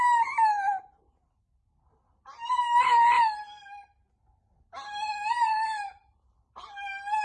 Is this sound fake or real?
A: real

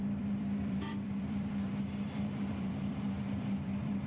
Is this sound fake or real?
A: fake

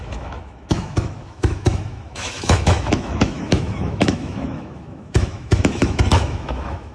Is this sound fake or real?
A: fake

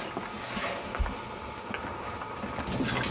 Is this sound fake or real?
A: real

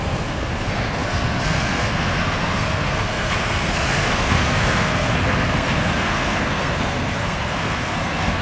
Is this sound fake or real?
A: fake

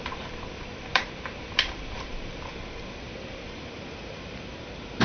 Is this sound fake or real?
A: fake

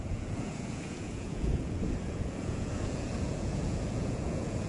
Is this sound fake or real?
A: fake